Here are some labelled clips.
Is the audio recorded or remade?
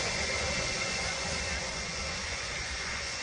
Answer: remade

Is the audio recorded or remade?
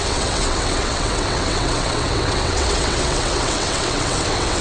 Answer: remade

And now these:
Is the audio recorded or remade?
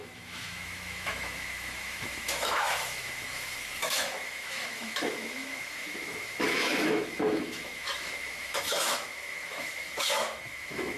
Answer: remade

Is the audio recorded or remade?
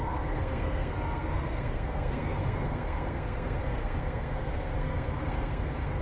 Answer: remade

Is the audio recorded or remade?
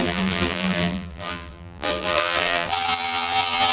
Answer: remade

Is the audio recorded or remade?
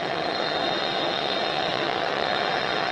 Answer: remade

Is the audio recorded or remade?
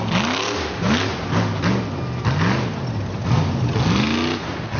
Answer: recorded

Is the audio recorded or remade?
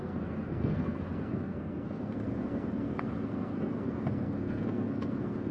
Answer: remade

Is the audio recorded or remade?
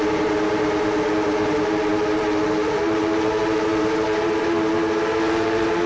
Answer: remade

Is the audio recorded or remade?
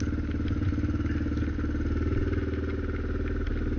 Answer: recorded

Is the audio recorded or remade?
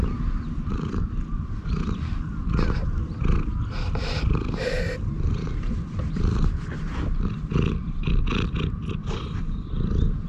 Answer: remade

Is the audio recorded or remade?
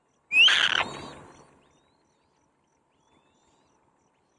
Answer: recorded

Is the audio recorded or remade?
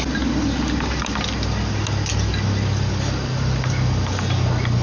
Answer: recorded